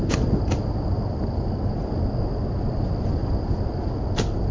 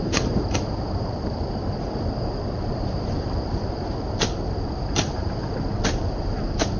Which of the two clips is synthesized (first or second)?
second